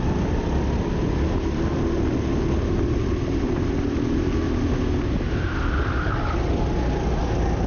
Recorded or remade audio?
recorded